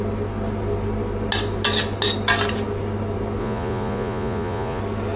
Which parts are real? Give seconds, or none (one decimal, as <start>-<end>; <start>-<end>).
0.0-3.4; 4.8-5.2